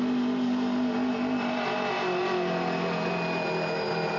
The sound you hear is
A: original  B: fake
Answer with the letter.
A